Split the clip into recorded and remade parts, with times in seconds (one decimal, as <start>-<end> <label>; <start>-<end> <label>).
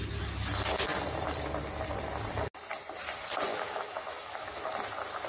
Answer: 0.0-3.5 recorded; 3.5-4.7 remade; 4.7-5.3 recorded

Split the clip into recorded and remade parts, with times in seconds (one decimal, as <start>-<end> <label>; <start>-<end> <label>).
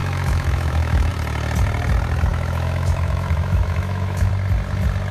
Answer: 0.0-1.1 remade; 1.1-2.3 recorded; 2.3-4.3 remade; 4.3-5.1 recorded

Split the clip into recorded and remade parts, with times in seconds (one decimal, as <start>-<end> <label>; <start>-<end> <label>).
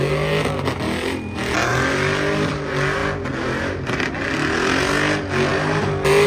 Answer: 0.0-6.3 recorded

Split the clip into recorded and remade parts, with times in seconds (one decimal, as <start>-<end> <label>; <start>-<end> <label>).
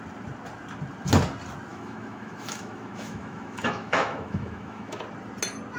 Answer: 0.0-1.7 recorded; 1.7-5.0 remade; 5.0-5.8 recorded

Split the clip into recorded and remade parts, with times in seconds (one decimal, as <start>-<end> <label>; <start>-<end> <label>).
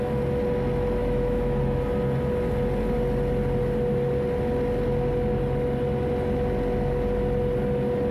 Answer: 0.0-1.0 recorded; 1.0-1.6 remade; 1.6-8.1 recorded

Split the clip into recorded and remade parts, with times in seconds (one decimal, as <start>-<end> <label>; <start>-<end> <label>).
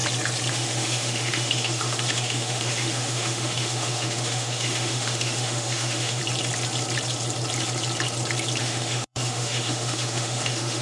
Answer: 0.0-0.5 recorded; 0.5-6.2 remade; 6.2-8.6 recorded; 8.6-10.8 remade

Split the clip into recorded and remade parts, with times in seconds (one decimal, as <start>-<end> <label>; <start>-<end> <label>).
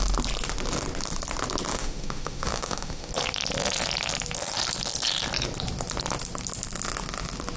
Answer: 0.0-1.7 recorded; 1.7-3.1 remade; 3.1-7.6 recorded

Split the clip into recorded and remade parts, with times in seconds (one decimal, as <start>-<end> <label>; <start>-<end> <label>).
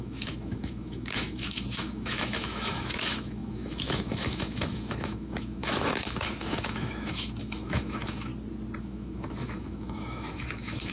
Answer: 0.0-8.3 remade; 8.3-8.8 recorded; 8.8-10.9 remade